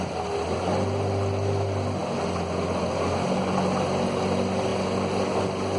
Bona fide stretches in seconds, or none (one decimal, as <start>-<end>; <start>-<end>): 0.0-5.8